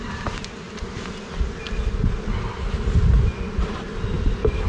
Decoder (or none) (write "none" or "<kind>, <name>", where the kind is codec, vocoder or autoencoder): none